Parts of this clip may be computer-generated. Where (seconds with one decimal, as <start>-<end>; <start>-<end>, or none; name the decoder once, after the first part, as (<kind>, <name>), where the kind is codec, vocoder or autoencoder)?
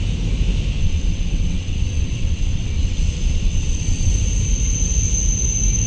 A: 0.8-4.1 (vocoder, WaveNeXt)